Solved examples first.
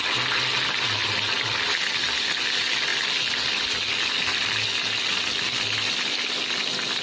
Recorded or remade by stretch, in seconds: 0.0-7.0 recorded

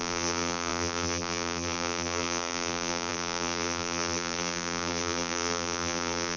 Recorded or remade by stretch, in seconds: 0.0-6.4 remade

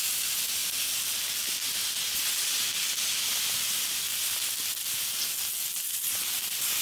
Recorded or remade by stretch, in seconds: 0.0-6.8 recorded

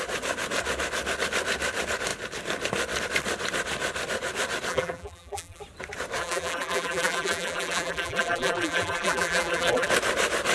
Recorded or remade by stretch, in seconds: 0.0-4.7 recorded; 4.7-5.6 remade; 5.6-6.2 recorded; 6.2-9.9 remade; 9.9-10.5 recorded

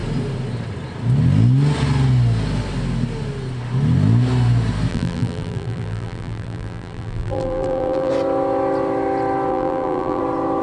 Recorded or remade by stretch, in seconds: 0.0-4.9 recorded; 4.9-8.1 remade; 8.1-9.5 recorded; 9.5-10.2 remade; 10.2-10.6 recorded

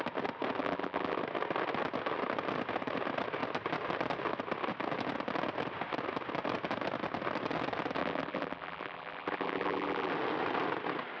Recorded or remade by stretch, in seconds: 0.0-0.6 recorded; 0.6-1.2 remade; 1.2-8.0 recorded; 8.0-10.1 remade; 10.1-11.2 recorded

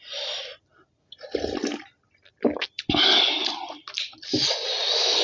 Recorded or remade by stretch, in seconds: 0.0-5.2 recorded